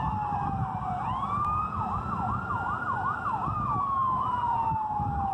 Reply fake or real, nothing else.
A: real